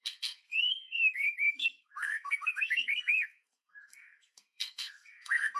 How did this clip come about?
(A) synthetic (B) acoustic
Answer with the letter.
A